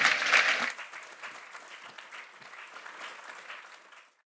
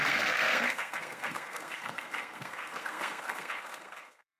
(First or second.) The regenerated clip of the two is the second